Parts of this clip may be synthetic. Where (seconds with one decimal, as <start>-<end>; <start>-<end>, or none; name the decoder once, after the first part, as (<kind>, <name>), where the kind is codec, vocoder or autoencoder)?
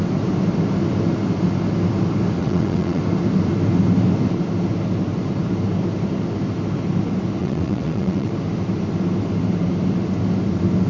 2.4-3.0 (vocoder, WaveNeXt); 7.4-8.3